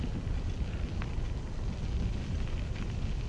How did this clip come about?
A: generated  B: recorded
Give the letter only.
B